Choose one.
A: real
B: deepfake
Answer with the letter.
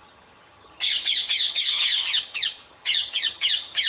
B